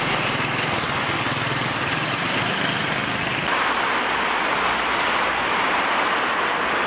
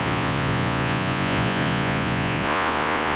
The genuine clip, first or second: first